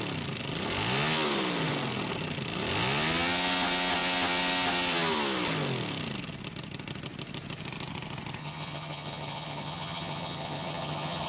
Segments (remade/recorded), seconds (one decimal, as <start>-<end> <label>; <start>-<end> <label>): 0.0-8.4 recorded; 8.4-11.3 remade